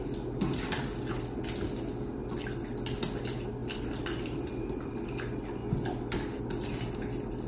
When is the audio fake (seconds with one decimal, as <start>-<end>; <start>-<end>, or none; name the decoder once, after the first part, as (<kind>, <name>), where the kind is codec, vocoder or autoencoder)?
3.6-4.9 (vocoder, BigVGAN v2)